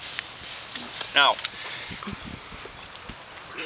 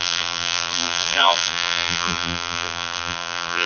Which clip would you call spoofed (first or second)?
second